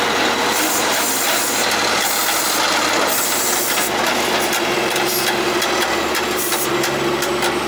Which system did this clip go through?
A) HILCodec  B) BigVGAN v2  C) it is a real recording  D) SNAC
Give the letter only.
C